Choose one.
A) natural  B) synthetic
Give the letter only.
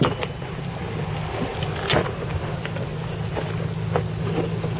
A